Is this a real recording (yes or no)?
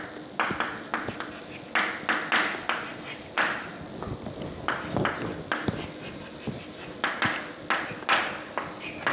yes